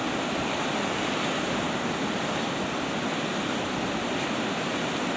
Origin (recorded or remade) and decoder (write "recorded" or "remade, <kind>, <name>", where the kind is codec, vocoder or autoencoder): recorded